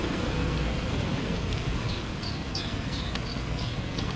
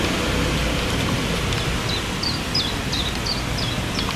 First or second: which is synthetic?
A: first